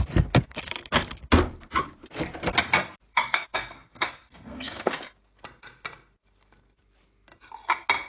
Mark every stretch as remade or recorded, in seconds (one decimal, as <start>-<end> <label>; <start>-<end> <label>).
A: 0.0-3.1 recorded; 3.1-5.1 remade; 5.1-8.1 recorded